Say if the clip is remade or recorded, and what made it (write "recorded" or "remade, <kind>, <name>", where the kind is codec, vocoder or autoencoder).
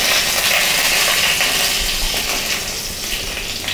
recorded